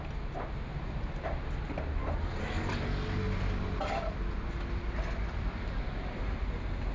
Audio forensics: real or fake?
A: real